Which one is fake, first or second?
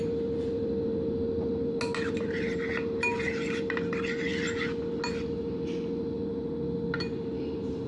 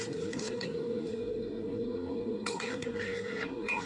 second